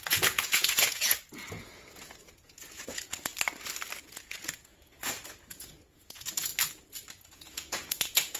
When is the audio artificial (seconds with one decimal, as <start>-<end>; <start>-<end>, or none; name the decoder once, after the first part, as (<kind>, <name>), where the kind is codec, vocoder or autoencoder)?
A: 0.0-3.3 (vocoder, Vocos); 4.0-6.5; 7.1-8.4